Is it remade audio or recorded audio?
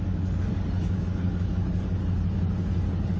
remade